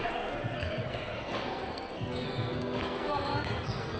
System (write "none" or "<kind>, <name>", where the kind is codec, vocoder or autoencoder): codec, SNAC